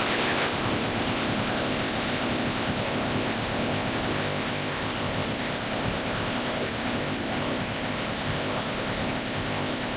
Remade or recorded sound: remade